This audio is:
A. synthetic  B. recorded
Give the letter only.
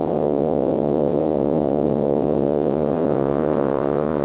A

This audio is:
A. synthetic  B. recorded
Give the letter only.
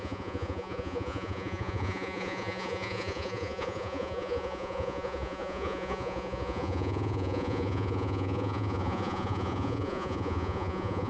A